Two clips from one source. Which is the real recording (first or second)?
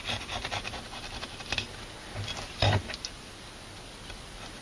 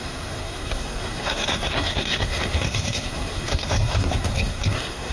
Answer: first